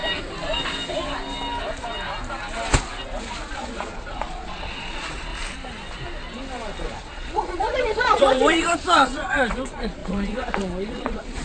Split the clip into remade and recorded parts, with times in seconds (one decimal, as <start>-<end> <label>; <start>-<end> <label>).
0.0-3.2 recorded; 3.2-5.3 remade; 5.3-6.8 recorded; 6.8-11.4 remade